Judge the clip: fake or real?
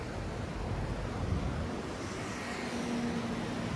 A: real